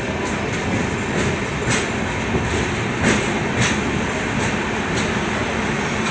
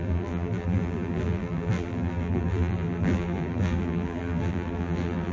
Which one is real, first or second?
first